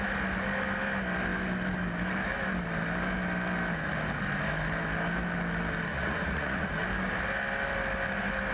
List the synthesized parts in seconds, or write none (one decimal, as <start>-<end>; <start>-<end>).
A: 5.9-6.7